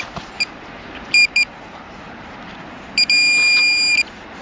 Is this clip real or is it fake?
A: fake